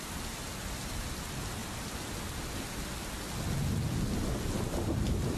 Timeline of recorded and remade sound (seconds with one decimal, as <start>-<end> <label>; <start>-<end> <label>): 0.0-5.4 recorded

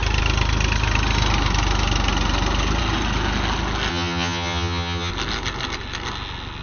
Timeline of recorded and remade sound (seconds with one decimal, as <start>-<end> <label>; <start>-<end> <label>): 0.0-3.9 recorded; 3.9-5.1 remade; 5.1-6.6 recorded

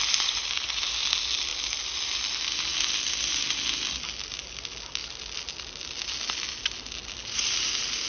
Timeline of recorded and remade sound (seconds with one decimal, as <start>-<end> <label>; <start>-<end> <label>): 0.0-8.1 recorded

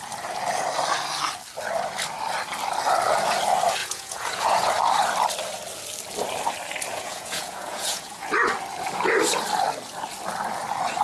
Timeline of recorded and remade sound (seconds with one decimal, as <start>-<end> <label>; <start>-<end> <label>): 0.0-3.8 recorded; 3.8-4.7 remade; 4.7-6.9 recorded; 6.9-8.3 remade; 8.3-11.0 recorded

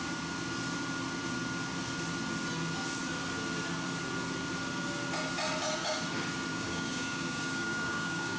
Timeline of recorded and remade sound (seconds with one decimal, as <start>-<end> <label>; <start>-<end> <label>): 0.0-6.5 recorded; 6.5-8.4 remade

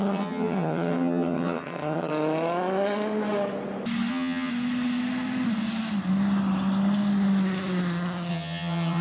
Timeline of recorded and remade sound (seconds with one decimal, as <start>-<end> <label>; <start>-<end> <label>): 0.0-2.1 remade; 2.1-4.1 recorded; 4.1-4.5 remade; 4.5-8.3 recorded; 8.3-9.0 remade

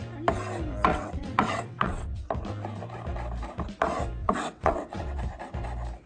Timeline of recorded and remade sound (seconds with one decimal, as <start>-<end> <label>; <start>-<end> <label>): 0.0-0.9 recorded; 0.9-2.3 remade; 2.3-4.2 recorded; 4.2-5.2 remade; 5.2-6.1 recorded

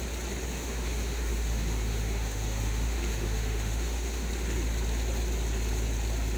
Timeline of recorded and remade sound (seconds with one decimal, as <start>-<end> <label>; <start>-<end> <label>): 0.0-0.5 recorded; 0.5-4.3 remade; 4.3-6.4 recorded